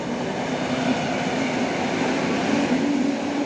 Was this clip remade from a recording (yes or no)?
no